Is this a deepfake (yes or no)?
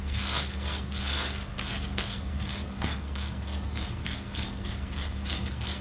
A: yes